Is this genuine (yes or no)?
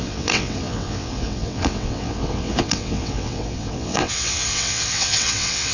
no